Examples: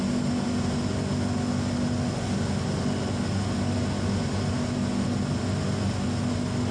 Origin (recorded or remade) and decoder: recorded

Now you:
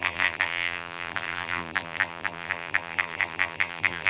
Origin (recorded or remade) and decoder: remade, vocoder, BigVGAN v2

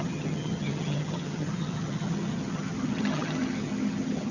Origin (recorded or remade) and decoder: remade, vocoder, HiFi-GAN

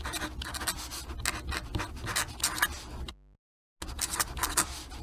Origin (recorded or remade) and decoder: recorded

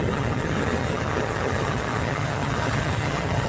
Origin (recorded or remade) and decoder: remade, vocoder, HiFi-GAN